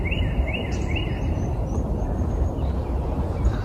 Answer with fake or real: fake